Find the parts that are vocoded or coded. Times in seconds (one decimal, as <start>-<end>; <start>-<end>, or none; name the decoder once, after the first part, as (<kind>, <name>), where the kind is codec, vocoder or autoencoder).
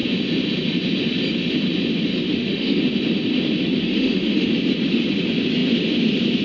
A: 2.1-2.8 (autoencoder, DAC-VAE); 3.8-4.5